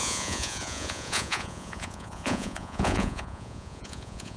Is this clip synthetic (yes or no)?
yes